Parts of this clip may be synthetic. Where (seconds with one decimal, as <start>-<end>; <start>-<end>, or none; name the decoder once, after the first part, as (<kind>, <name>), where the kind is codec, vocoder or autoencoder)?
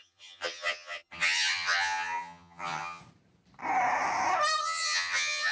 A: 0.0-3.0 (vocoder, HiFi-GAN); 4.6-5.5